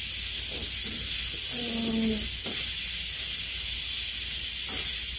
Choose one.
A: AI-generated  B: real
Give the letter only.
B